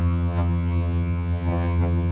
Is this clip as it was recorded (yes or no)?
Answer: no